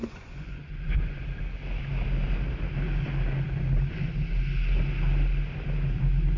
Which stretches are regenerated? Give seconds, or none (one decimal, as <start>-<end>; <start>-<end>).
0.0-1.2